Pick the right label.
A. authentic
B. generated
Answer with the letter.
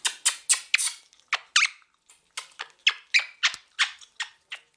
A